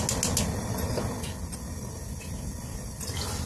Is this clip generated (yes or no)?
no